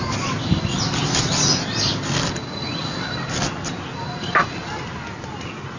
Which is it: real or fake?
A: real